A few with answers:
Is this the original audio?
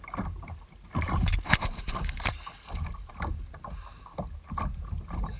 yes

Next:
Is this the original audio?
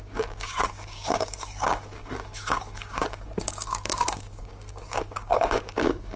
no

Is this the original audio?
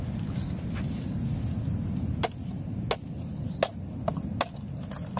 yes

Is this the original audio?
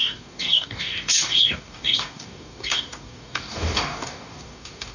no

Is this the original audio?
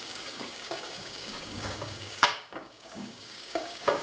no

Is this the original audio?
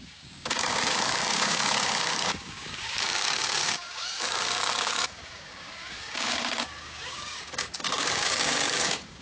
no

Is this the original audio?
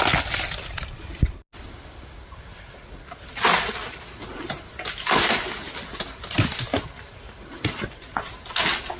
yes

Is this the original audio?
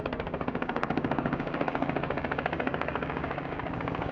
no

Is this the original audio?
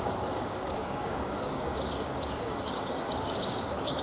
no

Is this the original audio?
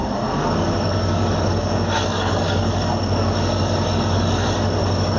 no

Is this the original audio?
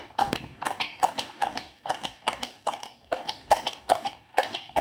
no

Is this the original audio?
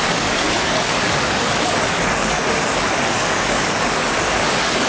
no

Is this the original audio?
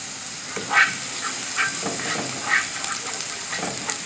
yes